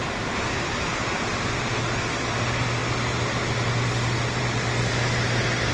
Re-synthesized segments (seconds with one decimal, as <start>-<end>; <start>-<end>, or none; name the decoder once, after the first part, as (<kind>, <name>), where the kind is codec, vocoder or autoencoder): none